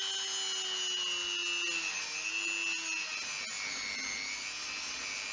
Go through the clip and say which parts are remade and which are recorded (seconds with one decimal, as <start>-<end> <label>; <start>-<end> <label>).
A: 0.0-5.3 recorded